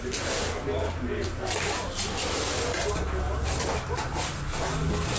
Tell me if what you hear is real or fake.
real